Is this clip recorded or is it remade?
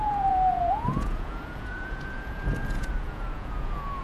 remade